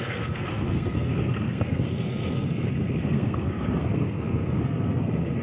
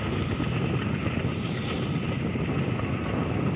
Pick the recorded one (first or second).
second